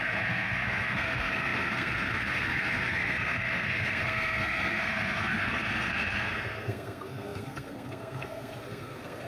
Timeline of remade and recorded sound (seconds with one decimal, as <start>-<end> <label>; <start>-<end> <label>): 0.0-9.3 remade